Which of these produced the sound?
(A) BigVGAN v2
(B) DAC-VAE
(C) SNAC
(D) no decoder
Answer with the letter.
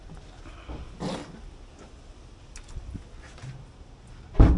D